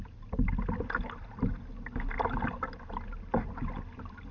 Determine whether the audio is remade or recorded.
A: recorded